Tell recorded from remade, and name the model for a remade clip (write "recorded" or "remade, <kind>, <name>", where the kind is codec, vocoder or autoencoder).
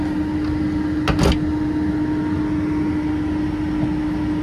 recorded